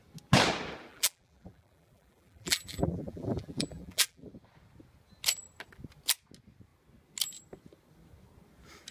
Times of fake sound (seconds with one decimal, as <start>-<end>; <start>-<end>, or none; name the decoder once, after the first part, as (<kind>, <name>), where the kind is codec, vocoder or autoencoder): 0.9-4.3 (vocoder, BigVGAN v2)